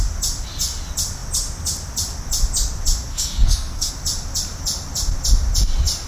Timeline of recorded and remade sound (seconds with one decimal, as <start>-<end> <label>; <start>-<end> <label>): 0.0-3.1 recorded; 3.1-3.9 remade; 3.9-6.1 recorded